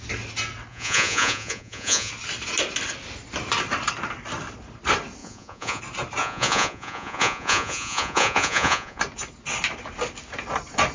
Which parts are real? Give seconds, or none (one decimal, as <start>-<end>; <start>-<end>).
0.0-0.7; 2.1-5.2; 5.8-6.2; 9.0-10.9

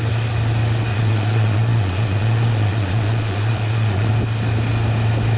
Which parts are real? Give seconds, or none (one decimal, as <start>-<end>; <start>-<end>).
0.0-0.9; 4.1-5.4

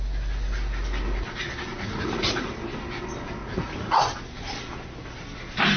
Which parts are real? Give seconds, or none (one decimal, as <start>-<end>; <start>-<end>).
0.0-1.7; 2.5-3.4; 4.0-5.8

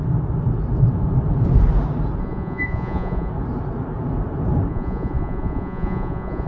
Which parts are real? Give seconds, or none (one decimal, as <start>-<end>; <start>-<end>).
0.0-2.2; 3.3-4.7